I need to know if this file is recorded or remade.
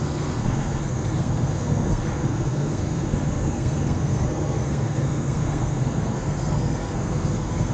remade